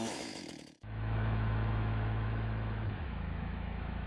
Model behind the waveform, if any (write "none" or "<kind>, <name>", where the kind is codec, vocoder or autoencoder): autoencoder, DAC-VAE